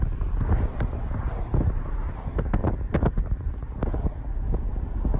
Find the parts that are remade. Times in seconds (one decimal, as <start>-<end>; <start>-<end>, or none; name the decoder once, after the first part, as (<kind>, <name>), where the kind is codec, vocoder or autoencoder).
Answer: none